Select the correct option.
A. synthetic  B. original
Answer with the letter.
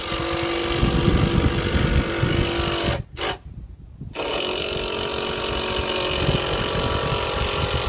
B